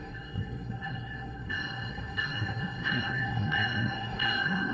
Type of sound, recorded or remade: remade